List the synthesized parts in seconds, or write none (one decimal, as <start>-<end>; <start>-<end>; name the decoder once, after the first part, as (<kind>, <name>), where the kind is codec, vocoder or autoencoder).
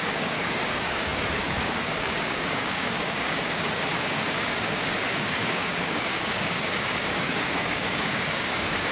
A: 0.0-8.9 (codec, DAC)